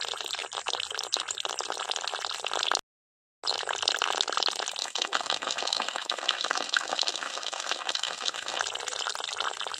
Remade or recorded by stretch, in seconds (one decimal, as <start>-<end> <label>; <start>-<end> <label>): 0.0-4.8 recorded; 4.8-8.6 remade; 8.6-9.8 recorded